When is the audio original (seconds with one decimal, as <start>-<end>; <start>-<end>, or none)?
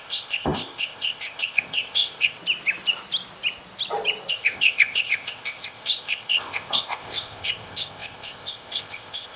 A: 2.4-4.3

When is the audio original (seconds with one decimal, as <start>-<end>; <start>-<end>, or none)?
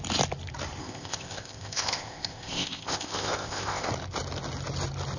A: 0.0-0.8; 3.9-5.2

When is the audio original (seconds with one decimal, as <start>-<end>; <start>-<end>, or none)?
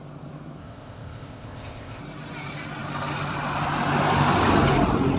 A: 0.0-0.6; 2.0-5.2